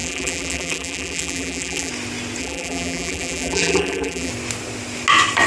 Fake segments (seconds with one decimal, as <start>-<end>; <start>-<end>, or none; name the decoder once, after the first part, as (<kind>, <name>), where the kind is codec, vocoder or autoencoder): 0.0-1.9 (vocoder, BigVGAN v2); 2.4-4.3